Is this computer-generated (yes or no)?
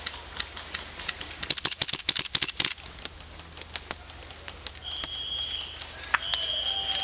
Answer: no